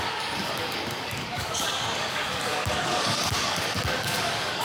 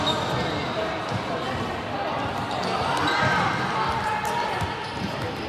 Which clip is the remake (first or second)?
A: first